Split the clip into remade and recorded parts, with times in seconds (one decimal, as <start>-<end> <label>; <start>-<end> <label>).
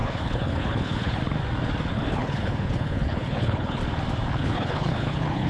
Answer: 0.0-1.2 remade; 1.2-1.9 recorded; 1.9-3.8 remade; 3.8-4.3 recorded; 4.3-5.5 remade